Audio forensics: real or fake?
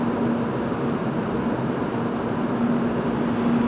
real